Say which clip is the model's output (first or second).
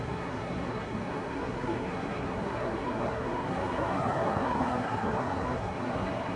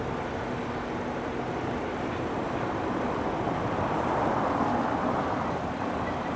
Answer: first